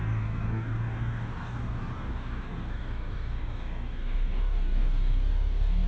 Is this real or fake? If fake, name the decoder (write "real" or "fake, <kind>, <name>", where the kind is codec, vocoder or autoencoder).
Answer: fake, codec, DAC